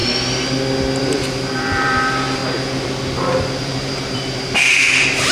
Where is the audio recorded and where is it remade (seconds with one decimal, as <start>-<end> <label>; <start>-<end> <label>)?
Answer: 0.0-1.0 recorded; 1.0-2.4 remade; 2.4-3.6 recorded; 3.6-5.3 remade